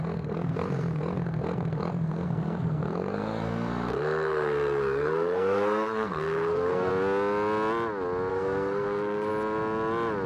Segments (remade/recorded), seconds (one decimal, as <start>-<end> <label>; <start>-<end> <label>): 0.0-6.9 remade; 6.9-8.3 recorded; 8.3-9.3 remade; 9.3-10.3 recorded